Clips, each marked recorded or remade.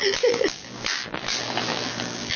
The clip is remade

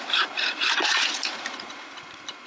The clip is remade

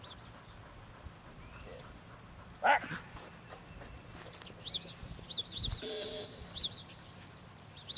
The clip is recorded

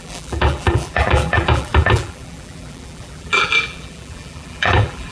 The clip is remade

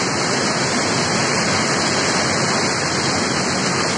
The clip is recorded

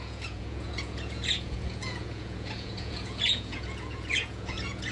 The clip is remade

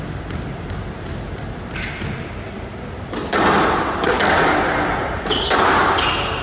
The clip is recorded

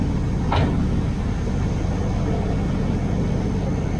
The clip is recorded